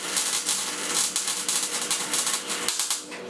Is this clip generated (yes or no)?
no